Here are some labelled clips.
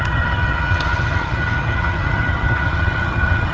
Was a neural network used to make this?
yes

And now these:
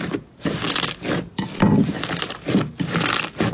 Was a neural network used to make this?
no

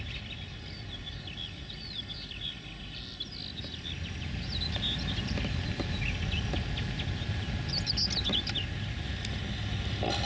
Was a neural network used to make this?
no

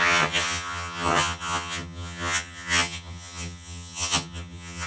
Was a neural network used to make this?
yes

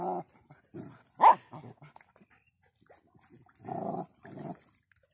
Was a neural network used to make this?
no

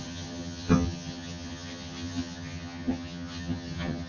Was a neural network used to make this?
yes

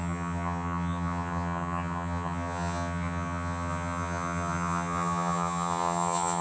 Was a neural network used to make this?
yes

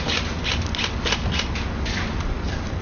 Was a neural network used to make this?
no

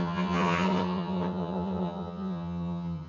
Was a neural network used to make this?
yes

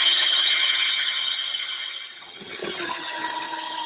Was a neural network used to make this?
yes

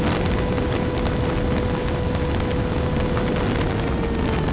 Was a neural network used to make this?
no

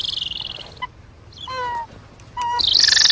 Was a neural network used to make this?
no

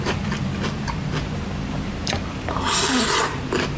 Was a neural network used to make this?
no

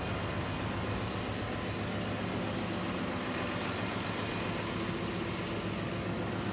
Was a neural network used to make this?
no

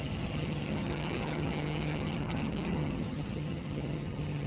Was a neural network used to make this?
yes